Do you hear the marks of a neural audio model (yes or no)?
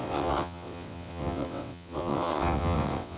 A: yes